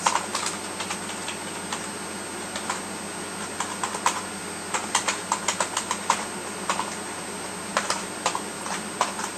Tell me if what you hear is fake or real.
real